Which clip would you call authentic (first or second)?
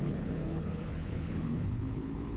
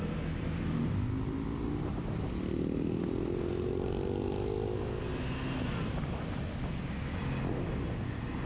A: second